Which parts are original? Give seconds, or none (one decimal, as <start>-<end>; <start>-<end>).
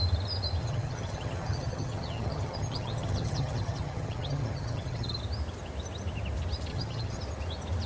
0.0-0.6; 5.2-6.7; 7.2-7.9